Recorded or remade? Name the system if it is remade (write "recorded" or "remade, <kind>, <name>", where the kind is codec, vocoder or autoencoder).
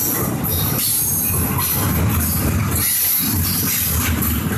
recorded